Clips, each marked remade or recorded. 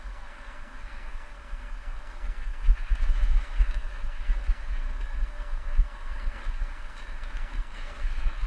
remade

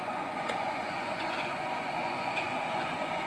remade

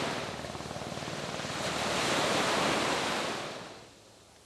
remade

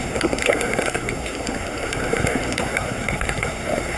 remade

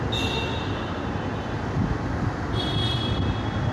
recorded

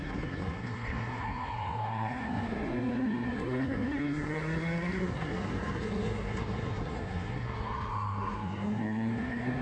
remade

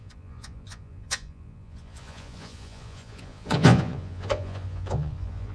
remade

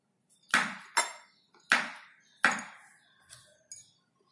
recorded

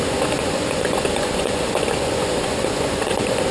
remade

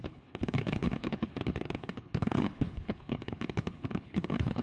remade